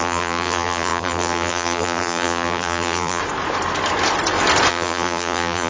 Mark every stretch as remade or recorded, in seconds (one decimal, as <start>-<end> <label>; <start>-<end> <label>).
0.0-3.2 remade; 3.2-4.7 recorded; 4.7-5.7 remade